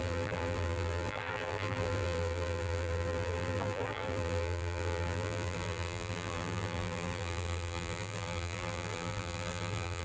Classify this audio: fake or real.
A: fake